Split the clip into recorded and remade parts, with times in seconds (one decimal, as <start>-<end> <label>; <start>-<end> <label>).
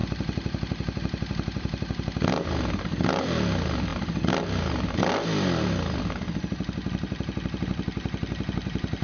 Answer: 0.0-9.0 recorded